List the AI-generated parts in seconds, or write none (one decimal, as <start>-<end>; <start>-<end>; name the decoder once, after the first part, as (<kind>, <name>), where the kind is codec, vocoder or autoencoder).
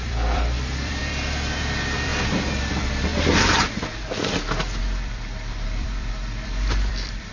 0.0-2.1 (vocoder, BigVGAN v2); 2.6-3.1; 4.8-7.3